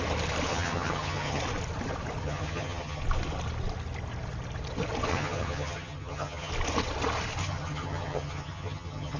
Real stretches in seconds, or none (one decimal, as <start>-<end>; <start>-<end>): 0.0-0.5; 1.4-2.2; 3.0-5.1; 6.5-7.4